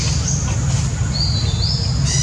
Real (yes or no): yes